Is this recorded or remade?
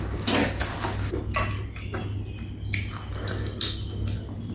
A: recorded